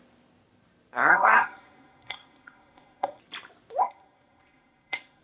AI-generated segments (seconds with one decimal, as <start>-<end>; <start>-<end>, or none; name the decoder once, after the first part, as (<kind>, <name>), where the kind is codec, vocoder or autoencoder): 1.1-3.2 (codec, SNAC); 3.8-5.2

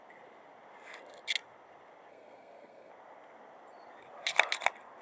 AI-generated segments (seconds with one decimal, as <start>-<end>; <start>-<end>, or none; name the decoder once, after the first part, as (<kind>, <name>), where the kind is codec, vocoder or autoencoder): 2.1-2.9 (codec, SNAC)

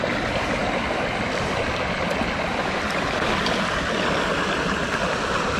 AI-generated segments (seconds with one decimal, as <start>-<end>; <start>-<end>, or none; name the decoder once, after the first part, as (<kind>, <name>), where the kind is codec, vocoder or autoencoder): none

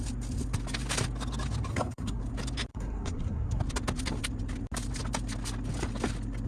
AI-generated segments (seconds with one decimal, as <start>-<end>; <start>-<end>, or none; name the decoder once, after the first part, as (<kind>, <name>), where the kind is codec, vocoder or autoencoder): 1.7-2.2 (codec, SNAC); 2.7-3.6

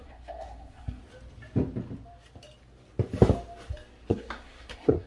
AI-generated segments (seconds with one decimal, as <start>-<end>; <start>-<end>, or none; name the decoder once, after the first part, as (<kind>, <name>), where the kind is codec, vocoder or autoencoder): 0.0-1.0 (codec, SNAC); 4.1-5.1

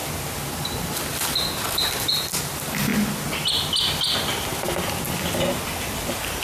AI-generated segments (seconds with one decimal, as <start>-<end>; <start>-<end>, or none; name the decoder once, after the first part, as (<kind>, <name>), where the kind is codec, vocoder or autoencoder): none

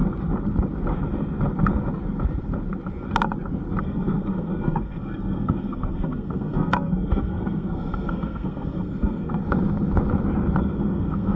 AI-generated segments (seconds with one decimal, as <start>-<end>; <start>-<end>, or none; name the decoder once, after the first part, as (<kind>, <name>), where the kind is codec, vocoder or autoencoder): 3.8-9.4 (codec, SNAC); 10.6-11.4